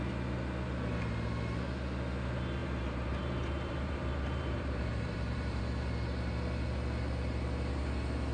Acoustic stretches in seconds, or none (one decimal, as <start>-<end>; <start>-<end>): 0.0-2.6; 5.6-8.3